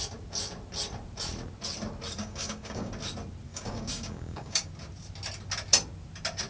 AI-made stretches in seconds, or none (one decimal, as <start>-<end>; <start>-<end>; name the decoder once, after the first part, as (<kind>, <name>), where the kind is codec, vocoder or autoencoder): 2.2-2.9 (codec, DAC); 3.5-4.7